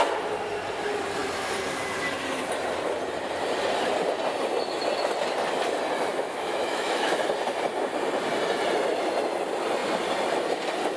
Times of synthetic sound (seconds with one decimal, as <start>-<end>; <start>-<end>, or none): 6.1-7.2